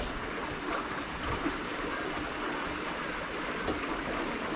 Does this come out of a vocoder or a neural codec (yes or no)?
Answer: no